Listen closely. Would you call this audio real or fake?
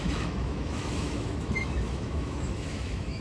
fake